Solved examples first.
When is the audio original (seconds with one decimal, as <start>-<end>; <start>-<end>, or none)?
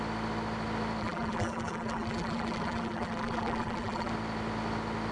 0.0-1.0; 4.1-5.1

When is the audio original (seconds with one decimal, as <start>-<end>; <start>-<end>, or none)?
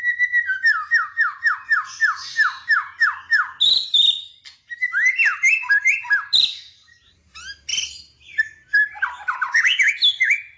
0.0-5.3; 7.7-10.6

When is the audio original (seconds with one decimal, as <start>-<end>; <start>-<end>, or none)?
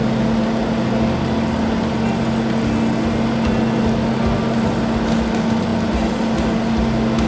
0.0-7.3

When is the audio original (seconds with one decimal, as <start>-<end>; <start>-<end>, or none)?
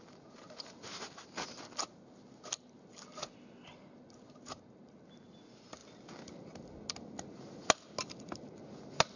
0.0-9.2